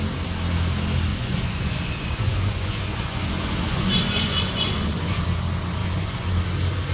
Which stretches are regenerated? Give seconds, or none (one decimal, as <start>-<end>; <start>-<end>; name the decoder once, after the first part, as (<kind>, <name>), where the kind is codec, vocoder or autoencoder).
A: 1.1-5.2 (vocoder, Vocos); 5.8-6.3